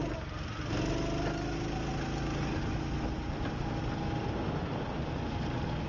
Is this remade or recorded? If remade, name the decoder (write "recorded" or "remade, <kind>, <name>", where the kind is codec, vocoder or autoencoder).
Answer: recorded